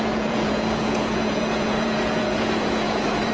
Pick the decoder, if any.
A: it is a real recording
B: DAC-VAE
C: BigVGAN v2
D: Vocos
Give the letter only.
D